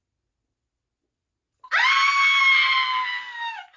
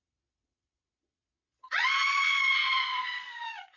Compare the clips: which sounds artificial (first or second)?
second